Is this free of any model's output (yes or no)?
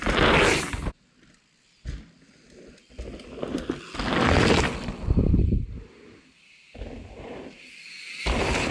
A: yes